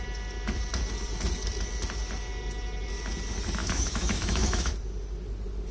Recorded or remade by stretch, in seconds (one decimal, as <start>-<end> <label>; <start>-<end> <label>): 0.0-3.6 recorded; 3.6-4.7 remade; 4.7-5.7 recorded